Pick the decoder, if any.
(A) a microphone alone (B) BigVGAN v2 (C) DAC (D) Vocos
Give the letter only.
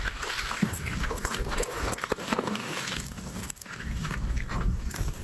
C